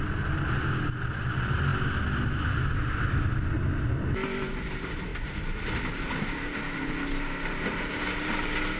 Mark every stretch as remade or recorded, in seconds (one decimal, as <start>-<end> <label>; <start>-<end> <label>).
0.0-8.8 recorded